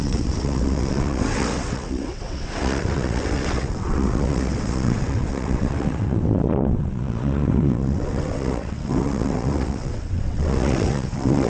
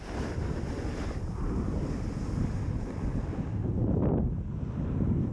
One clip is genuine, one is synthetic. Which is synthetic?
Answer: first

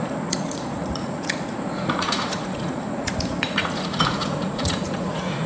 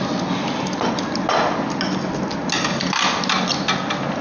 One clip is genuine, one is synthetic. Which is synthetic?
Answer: first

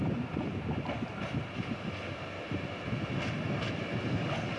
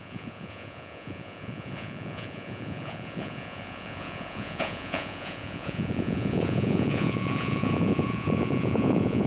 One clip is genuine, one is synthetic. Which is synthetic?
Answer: second